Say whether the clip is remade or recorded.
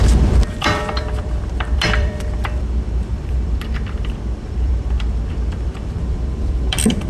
remade